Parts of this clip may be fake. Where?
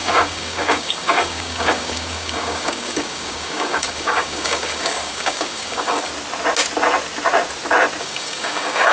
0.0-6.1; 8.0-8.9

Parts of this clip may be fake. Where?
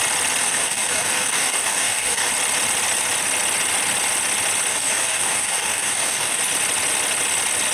0.4-2.3; 4.7-6.4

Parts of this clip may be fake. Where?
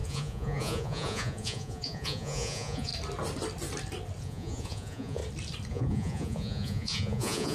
0.0-2.9; 4.2-5.2; 5.7-7.5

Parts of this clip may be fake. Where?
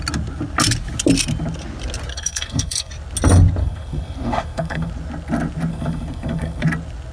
2.1-2.9; 3.6-4.9; 5.7-6.6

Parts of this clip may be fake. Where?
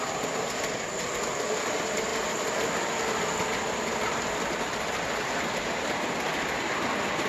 none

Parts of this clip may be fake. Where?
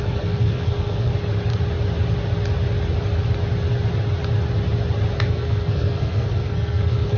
0.0-1.1; 5.3-7.2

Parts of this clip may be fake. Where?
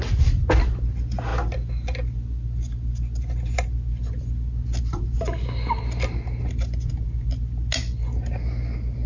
none